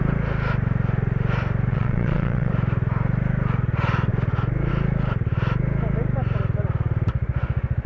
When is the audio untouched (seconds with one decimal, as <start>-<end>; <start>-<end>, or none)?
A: 0.0-1.7; 2.5-7.9